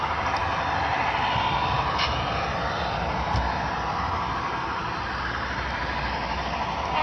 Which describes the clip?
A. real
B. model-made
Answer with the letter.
A